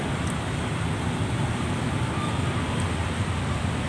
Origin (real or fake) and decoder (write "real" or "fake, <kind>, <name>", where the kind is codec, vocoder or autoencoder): real